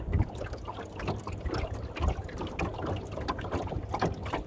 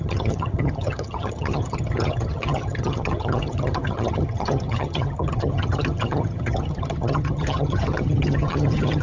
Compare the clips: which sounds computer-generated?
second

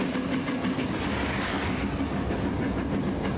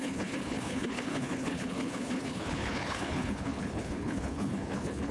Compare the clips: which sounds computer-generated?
second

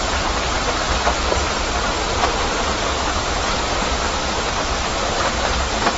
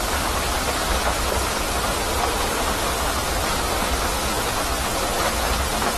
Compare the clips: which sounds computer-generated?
first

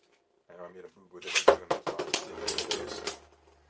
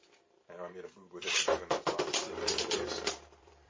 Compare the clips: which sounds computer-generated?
second